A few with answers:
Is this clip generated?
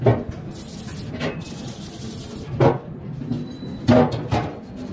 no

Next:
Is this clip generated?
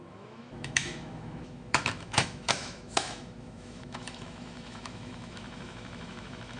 yes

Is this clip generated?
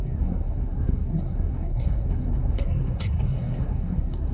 yes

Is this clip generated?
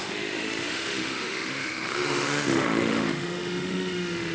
yes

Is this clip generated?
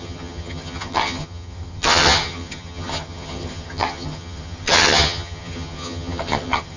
yes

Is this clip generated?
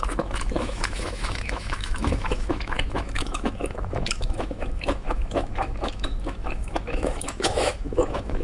yes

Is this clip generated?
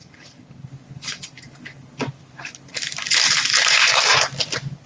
no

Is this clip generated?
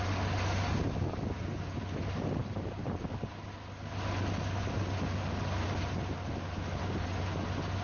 no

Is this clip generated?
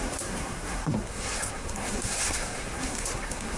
yes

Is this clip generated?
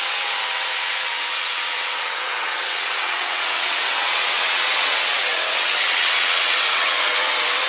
yes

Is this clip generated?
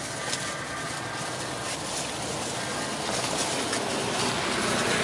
no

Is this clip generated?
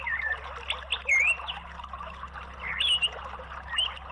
no